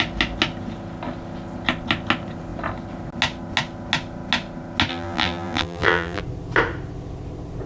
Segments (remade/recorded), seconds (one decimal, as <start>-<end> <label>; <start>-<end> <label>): 0.0-4.9 recorded; 4.9-6.2 remade; 6.2-7.7 recorded